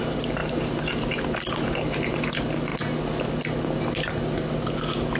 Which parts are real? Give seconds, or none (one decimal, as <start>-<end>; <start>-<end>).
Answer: 0.0-5.2